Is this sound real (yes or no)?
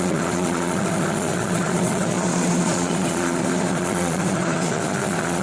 no